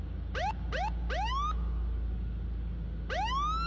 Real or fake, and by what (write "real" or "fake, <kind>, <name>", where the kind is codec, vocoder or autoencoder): real